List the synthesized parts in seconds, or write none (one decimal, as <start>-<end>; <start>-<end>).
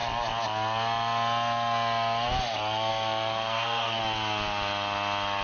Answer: 2.9-4.0